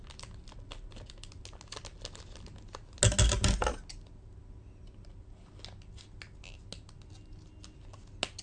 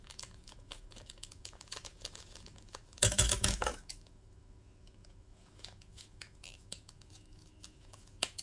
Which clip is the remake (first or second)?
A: second